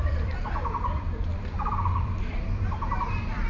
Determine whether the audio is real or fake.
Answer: fake